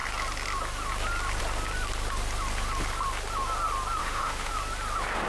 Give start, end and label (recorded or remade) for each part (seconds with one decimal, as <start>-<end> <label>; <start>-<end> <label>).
0.0-4.0 recorded; 4.0-4.5 remade; 4.5-5.3 recorded